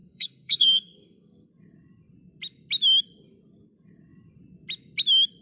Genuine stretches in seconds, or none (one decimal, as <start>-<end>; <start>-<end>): 1.5-5.4